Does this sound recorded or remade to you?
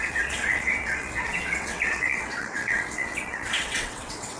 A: remade